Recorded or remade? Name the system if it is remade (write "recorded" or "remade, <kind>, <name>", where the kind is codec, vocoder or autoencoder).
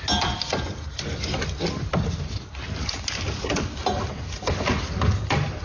recorded